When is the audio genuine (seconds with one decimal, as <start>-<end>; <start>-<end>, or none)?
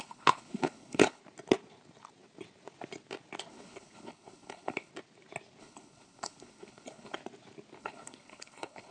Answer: 1.2-3.5; 4.9-5.6; 7.2-7.8